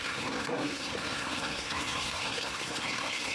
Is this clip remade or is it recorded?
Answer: remade